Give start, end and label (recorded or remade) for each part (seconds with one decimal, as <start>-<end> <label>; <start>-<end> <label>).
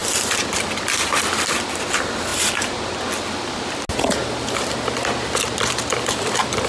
0.0-6.7 recorded